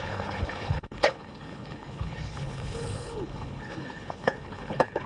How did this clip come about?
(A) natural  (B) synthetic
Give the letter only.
B